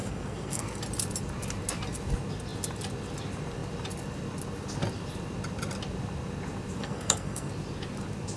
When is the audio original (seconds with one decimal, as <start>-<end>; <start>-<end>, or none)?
0.8-6.8; 7.5-8.4